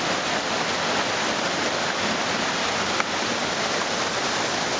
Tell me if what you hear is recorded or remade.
recorded